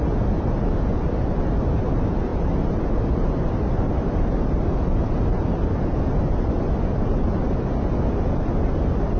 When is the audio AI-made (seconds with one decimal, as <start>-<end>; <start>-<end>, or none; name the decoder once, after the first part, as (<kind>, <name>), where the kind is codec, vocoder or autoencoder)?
none